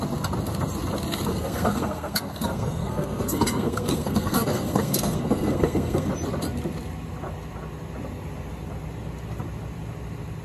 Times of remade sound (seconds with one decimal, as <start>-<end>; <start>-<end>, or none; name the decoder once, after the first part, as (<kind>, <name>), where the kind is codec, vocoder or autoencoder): 1.3-6.1 (codec, SNAC)